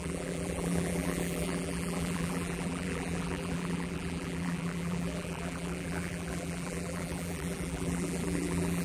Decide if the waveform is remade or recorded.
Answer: remade